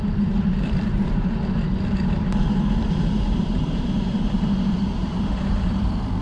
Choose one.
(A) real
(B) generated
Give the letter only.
B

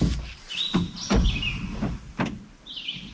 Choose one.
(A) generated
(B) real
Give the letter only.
B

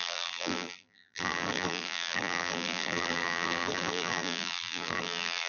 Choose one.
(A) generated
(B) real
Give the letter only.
A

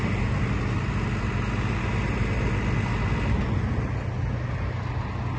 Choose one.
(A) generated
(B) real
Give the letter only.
B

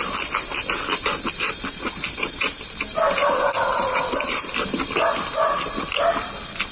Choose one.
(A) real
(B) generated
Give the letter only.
A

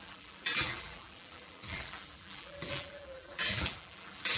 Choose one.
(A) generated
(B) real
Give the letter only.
A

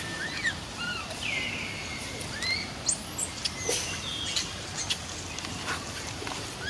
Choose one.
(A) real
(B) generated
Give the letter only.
A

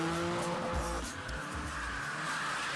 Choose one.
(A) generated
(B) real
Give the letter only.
B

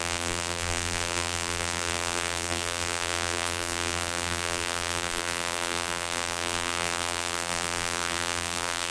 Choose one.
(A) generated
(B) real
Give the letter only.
A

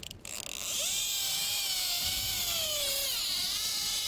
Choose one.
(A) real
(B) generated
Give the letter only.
A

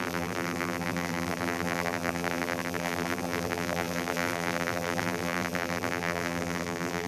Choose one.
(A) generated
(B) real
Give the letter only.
A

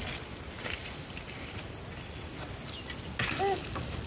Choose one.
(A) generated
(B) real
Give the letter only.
B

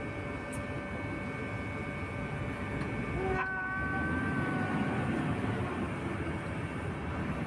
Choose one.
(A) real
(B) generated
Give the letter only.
A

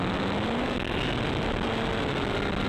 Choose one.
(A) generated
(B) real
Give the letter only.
B